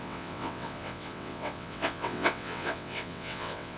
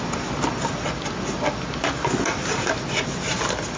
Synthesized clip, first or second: first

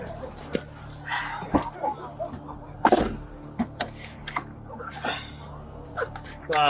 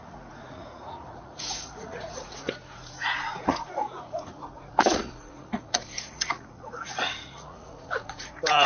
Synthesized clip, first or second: second